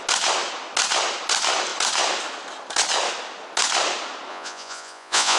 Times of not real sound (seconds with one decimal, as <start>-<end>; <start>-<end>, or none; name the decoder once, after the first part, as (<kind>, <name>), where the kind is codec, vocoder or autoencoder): 4.3-5.4 (vocoder, Vocos)